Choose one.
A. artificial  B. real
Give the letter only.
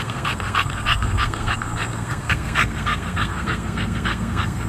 A